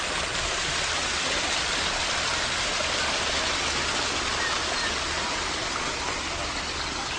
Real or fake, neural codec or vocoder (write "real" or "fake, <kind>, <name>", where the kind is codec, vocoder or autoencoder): real